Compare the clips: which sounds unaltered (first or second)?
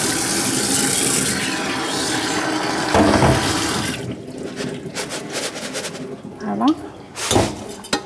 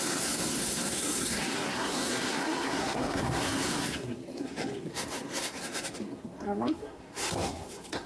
first